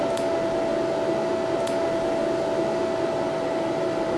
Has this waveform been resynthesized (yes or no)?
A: no